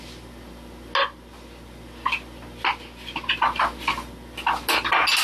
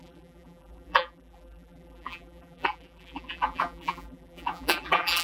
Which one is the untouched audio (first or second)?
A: first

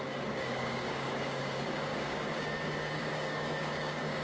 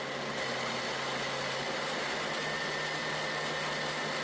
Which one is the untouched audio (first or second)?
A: second